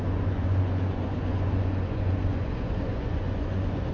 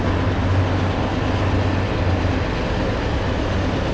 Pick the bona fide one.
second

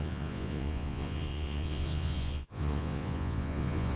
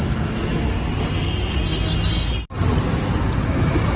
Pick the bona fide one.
second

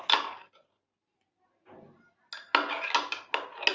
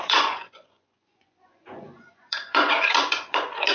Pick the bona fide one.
first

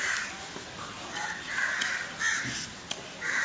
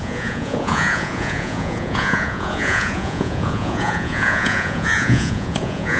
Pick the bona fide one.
first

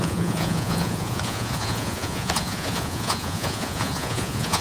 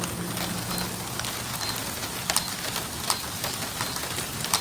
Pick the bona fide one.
second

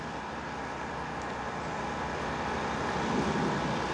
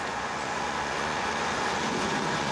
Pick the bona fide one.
first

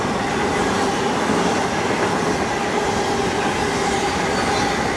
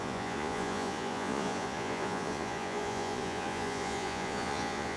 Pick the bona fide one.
first